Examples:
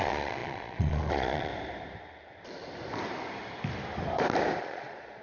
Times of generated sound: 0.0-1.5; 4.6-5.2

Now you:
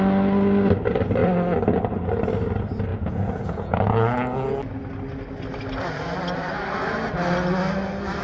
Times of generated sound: 2.9-3.8

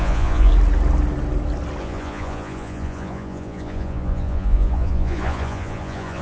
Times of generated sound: 0.0-0.5; 1.8-6.2

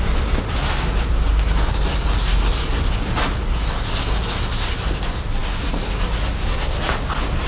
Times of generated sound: none